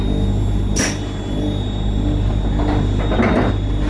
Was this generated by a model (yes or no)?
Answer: no